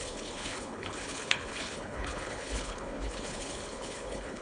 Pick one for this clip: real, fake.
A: fake